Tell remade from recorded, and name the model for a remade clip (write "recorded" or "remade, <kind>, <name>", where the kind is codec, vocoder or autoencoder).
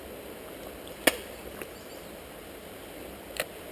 recorded